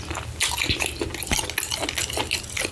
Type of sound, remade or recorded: recorded